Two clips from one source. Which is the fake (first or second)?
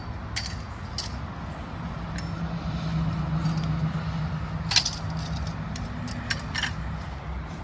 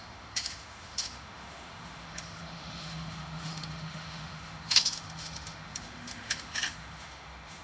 second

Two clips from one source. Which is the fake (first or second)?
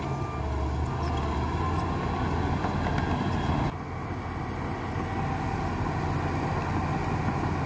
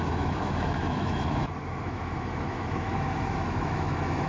second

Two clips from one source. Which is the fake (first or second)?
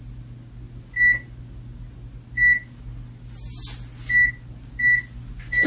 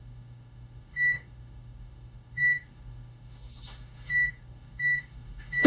second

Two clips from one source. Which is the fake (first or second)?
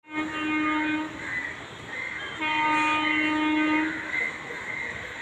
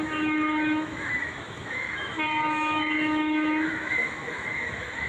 second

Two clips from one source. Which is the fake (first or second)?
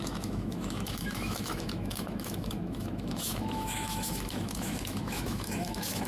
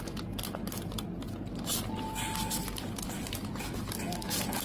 first